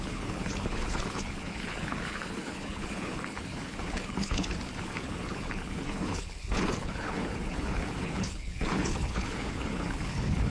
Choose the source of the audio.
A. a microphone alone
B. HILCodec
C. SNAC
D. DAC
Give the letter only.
B